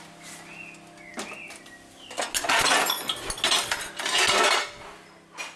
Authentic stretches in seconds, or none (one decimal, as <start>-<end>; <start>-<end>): 0.0-5.6